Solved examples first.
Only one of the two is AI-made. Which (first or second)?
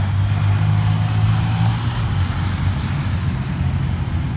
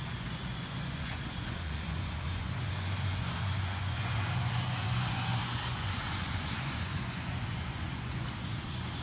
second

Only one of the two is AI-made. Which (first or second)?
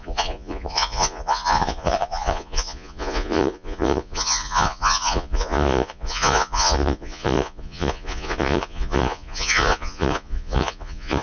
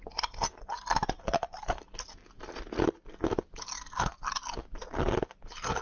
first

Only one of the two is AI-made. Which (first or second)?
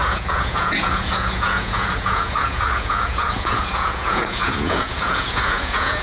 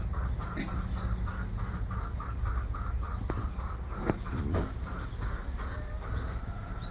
first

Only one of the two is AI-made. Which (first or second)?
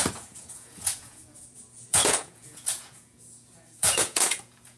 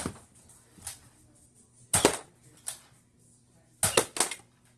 first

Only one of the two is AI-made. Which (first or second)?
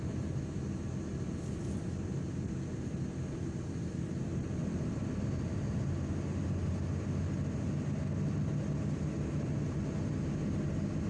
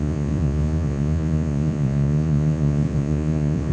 second